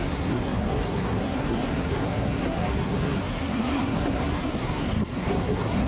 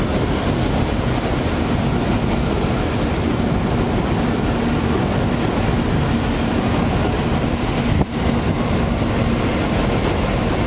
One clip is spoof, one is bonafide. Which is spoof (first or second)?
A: first